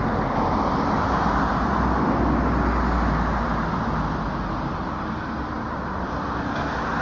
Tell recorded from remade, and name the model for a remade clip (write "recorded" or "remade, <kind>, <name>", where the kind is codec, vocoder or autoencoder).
recorded